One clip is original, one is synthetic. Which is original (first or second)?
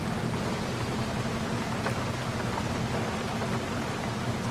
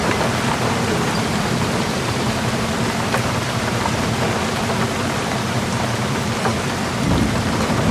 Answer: first